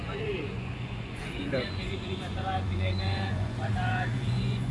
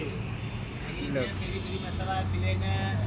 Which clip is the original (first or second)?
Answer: second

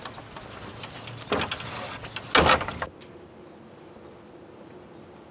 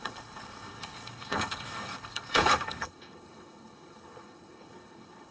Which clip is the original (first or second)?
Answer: first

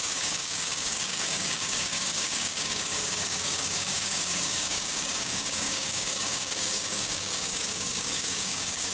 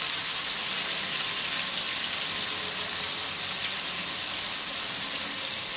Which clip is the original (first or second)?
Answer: second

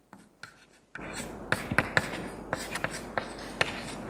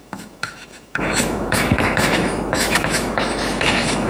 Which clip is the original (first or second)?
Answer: first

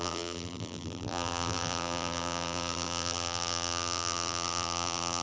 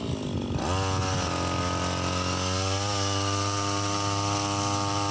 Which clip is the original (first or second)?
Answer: second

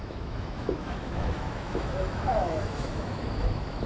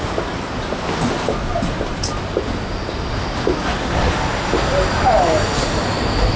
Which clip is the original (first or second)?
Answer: second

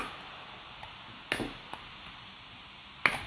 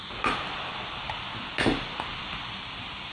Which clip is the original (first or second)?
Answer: first